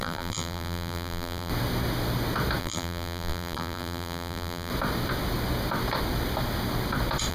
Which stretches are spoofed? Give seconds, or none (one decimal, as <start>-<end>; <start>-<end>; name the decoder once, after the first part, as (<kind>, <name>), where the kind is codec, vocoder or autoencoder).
0.0-1.5 (vocoder, BigVGAN v2); 2.6-4.7